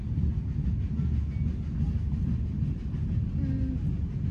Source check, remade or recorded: recorded